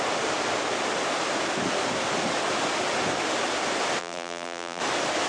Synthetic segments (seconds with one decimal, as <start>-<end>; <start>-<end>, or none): 4.0-4.8